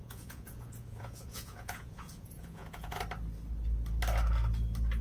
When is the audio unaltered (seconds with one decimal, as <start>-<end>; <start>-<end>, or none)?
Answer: 3.0-5.0

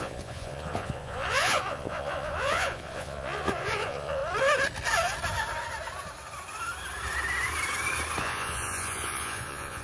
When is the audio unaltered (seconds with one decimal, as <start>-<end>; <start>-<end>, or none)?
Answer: 4.2-8.2

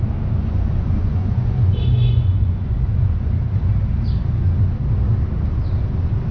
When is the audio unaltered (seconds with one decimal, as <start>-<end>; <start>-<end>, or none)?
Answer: 0.0-0.4; 3.3-6.3

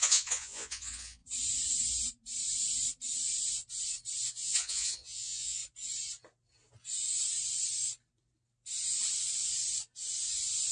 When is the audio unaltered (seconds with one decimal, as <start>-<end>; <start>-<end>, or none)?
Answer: 1.2-4.3; 5.6-10.7

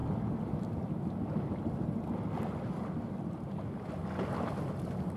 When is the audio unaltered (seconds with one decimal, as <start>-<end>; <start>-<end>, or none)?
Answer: 0.0-5.2

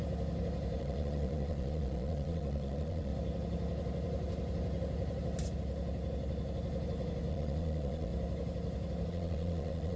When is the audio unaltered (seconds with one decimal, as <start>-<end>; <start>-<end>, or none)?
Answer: 0.0-0.8; 3.1-7.3; 8.1-9.1